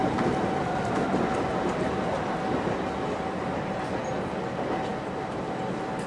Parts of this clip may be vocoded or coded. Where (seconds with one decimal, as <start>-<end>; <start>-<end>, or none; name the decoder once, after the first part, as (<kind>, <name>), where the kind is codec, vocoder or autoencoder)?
none